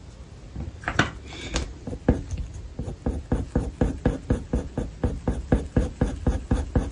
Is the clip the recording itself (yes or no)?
yes